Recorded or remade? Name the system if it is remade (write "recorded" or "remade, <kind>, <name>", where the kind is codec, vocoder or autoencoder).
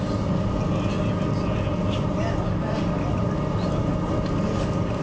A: recorded